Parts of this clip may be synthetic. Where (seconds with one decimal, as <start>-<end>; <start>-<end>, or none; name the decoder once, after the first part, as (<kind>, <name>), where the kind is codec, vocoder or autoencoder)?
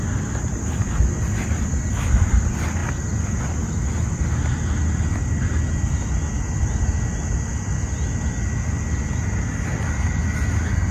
none